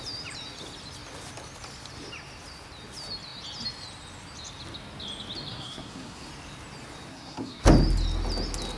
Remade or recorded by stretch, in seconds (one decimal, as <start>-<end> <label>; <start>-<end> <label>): 0.0-5.5 recorded; 5.5-6.3 remade; 6.3-7.1 recorded; 7.1-7.6 remade; 7.6-8.8 recorded